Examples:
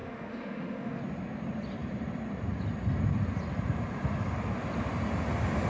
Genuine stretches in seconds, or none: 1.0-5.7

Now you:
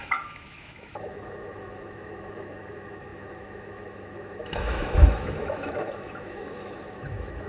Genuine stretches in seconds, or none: none

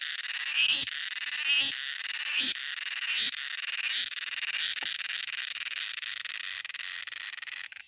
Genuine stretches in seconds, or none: 1.0-1.7

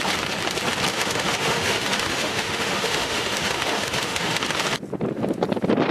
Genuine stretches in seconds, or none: 0.0-0.9; 4.4-5.9

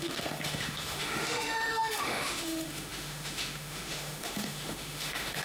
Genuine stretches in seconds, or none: none

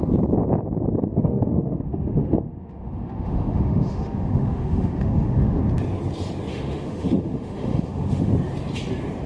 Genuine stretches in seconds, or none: 0.0-1.1; 5.6-6.5; 8.3-9.3

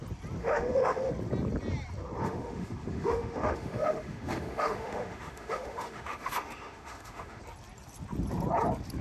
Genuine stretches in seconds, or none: 0.0-0.4; 1.1-2.2; 7.4-9.0